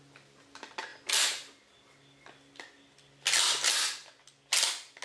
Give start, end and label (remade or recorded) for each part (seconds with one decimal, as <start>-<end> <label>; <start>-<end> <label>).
0.0-5.0 recorded